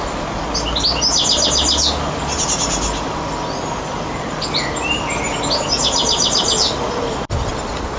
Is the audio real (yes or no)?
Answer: yes